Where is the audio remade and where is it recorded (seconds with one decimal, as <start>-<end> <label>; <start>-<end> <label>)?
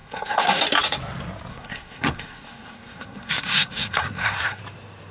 0.0-0.6 remade; 0.6-1.5 recorded; 1.5-4.6 remade; 4.6-5.1 recorded